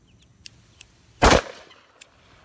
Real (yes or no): no